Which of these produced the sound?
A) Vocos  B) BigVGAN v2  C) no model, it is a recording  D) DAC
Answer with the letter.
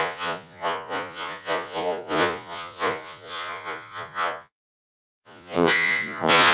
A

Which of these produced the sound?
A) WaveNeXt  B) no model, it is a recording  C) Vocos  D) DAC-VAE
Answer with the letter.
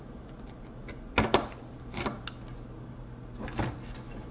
B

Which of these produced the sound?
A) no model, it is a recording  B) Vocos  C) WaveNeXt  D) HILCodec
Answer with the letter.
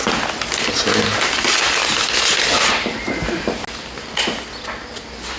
A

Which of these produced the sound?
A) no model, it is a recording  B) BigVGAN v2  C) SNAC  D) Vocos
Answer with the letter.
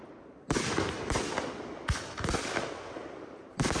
A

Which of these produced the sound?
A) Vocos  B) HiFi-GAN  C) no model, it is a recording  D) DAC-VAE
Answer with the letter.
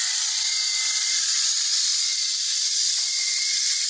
A